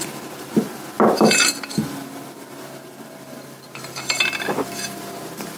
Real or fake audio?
fake